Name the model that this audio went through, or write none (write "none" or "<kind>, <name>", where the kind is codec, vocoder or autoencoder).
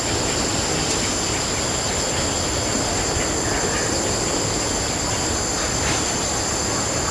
none